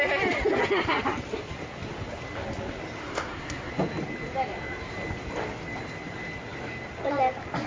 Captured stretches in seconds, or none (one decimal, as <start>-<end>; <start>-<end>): 0.0-3.0; 3.7-7.7